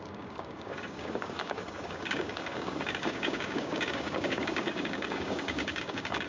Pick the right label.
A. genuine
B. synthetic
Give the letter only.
B